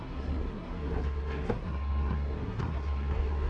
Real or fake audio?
fake